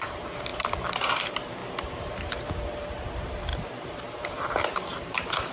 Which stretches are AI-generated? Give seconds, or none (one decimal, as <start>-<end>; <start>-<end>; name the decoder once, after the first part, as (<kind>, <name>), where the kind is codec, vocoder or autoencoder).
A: 0.0-1.6 (vocoder, BigVGAN v2); 2.5-5.5